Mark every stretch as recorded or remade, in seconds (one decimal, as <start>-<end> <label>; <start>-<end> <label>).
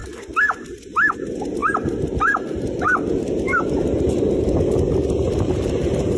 0.0-0.7 recorded; 0.7-1.6 remade; 1.6-5.3 recorded; 5.3-6.2 remade